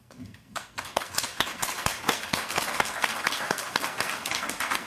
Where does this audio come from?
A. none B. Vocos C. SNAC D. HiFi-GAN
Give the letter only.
C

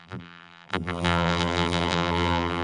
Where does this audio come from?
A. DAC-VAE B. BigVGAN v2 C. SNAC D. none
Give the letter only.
B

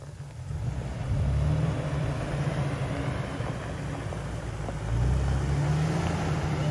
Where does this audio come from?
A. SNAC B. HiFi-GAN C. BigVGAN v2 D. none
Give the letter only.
D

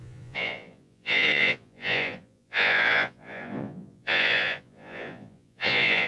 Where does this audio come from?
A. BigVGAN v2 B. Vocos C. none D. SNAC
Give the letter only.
B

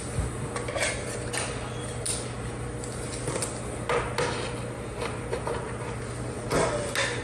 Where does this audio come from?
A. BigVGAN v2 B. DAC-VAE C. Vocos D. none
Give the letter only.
D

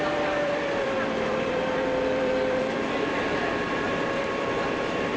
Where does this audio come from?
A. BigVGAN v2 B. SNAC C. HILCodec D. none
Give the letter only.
A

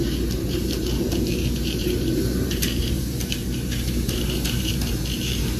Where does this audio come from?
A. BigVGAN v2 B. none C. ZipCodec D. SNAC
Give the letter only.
A